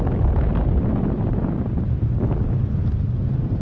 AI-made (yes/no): no